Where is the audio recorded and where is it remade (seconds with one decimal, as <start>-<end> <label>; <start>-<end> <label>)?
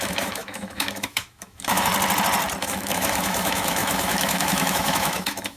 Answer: 0.0-1.9 remade; 1.9-2.6 recorded; 2.6-5.6 remade